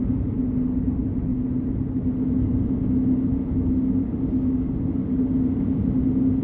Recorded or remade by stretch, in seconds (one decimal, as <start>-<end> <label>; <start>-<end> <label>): 0.0-6.4 recorded